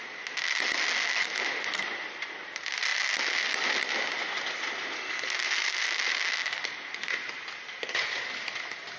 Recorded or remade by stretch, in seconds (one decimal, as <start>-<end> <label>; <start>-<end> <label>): 0.0-9.0 recorded